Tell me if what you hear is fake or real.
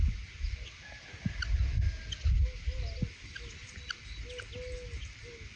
real